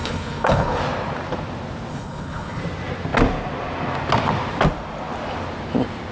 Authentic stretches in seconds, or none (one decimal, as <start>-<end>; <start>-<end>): 0.8-1.9; 2.6-6.1